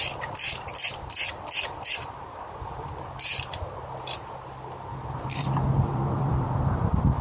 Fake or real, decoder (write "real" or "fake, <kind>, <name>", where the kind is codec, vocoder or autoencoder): fake, vocoder, BigVGAN v2